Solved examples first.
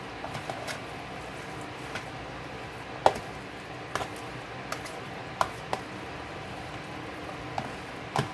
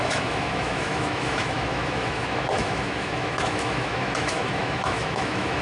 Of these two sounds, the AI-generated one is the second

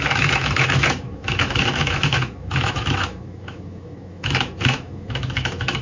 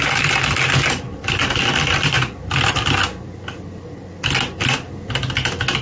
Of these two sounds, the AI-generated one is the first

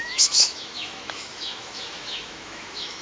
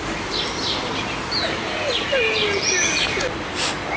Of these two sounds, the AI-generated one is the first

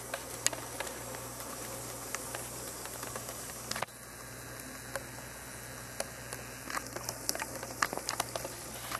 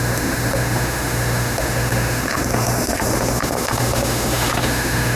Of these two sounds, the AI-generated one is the second